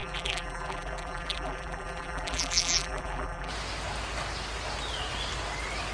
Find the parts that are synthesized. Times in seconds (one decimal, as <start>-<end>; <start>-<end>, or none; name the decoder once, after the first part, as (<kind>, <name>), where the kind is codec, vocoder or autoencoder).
0.0-3.5 (vocoder, BigVGAN v2)